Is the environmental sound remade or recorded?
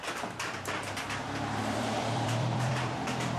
remade